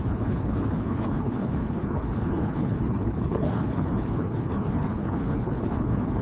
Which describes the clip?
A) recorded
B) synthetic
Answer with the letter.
B